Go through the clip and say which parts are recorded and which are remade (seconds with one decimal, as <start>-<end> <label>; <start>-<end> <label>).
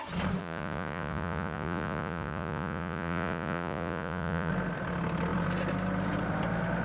0.0-0.4 recorded; 0.4-4.5 remade; 4.5-6.8 recorded